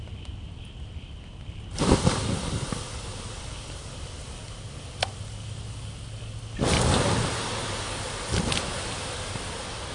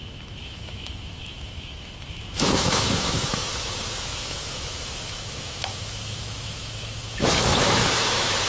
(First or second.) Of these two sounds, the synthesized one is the second